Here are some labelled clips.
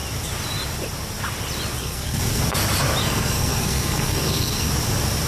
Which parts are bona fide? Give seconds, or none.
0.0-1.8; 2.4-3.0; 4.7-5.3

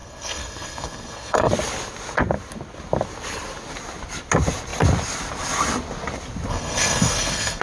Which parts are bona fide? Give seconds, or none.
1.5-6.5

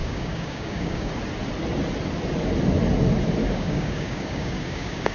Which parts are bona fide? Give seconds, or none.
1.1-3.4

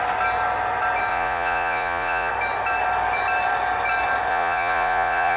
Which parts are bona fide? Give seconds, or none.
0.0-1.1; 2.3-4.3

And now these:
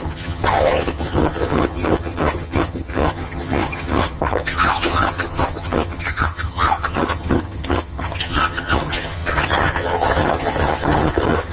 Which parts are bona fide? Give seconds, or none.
none